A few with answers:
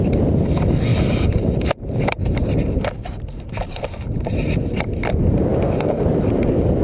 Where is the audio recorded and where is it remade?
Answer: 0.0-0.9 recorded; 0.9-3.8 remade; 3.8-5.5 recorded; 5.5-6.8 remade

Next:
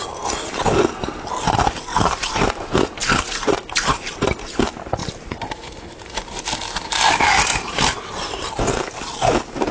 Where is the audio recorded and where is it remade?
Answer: 0.0-1.9 recorded; 1.9-4.6 remade; 4.6-5.0 recorded; 5.0-6.2 remade; 6.2-7.5 recorded; 7.5-8.6 remade; 8.6-9.7 recorded